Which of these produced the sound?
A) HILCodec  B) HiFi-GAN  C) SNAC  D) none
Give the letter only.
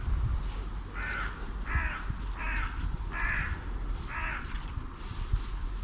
D